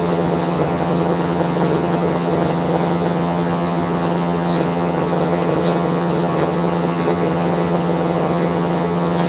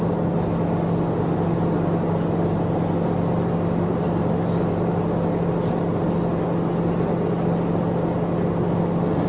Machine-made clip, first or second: first